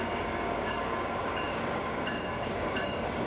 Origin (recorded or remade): remade